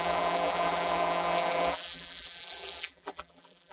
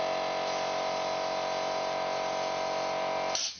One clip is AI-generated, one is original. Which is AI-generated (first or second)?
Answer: first